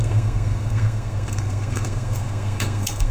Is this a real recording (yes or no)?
no